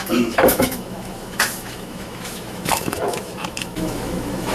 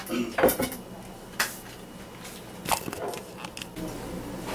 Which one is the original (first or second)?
second